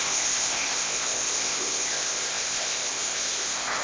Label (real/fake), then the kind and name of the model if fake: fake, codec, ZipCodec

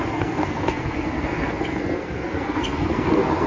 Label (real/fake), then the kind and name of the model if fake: fake, codec, SNAC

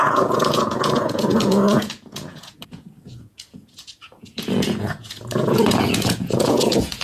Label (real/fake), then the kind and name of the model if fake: fake, vocoder, Vocos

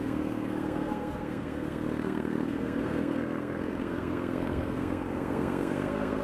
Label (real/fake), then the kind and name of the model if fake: fake, codec, SNAC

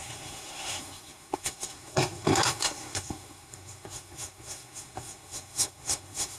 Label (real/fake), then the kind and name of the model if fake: fake, codec, SNAC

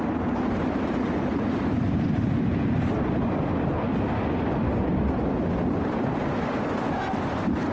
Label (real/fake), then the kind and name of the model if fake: real